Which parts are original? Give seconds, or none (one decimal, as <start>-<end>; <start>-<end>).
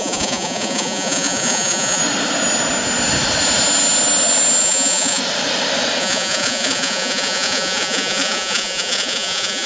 2.0-4.6; 5.2-6.0